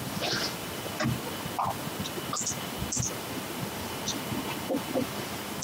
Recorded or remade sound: recorded